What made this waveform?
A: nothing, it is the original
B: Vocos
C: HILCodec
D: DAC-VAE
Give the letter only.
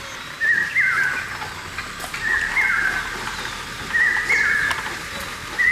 A